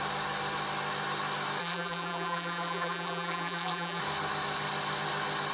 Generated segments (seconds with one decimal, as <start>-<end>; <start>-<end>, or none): 1.6-4.0